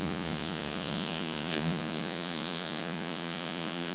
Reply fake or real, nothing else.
fake